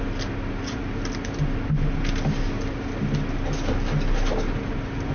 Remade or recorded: recorded